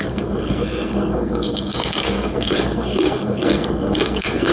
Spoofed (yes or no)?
yes